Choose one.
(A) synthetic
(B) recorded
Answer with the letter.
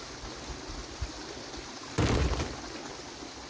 B